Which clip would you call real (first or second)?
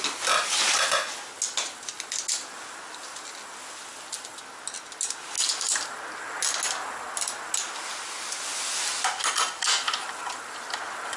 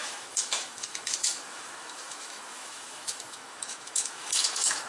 first